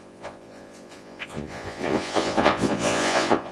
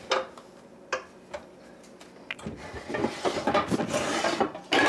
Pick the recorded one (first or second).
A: second